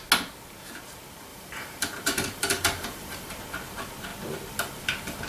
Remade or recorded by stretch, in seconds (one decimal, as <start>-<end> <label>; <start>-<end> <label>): 0.0-1.3 recorded; 1.3-3.3 remade; 3.3-5.3 recorded